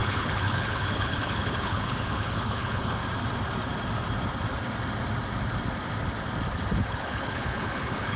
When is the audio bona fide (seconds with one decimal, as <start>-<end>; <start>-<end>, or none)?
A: 3.0-6.9